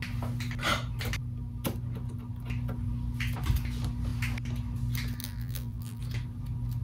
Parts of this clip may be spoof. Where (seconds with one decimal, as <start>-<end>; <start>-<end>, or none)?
5.2-6.0

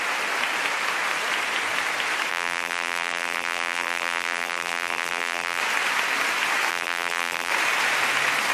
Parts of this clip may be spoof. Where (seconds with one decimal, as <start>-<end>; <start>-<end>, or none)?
2.3-5.6; 6.7-7.5

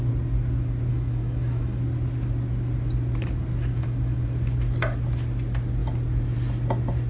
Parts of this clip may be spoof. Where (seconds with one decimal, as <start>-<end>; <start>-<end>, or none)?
0.9-1.8; 3.7-4.2

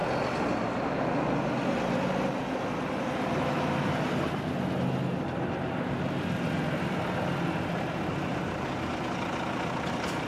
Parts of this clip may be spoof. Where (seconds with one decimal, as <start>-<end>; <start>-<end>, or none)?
none

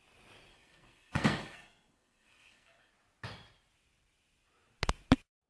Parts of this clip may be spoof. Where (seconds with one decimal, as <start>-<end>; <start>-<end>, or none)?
0.5-2.9

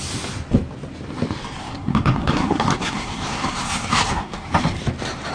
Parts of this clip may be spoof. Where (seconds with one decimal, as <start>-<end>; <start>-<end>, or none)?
1.6-4.8

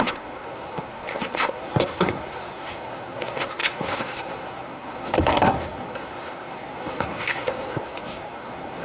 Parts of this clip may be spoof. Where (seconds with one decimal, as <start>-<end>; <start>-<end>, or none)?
0.0-8.8

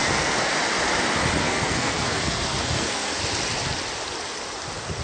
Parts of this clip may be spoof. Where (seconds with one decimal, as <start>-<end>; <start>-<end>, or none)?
0.0-0.5; 1.4-3.2